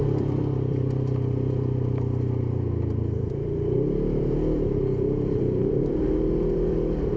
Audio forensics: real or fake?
fake